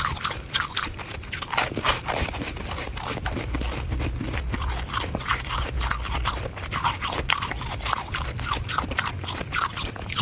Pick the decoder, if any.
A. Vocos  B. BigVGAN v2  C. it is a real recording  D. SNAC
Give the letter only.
C